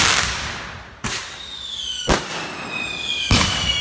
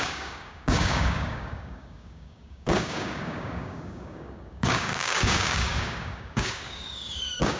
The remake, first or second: second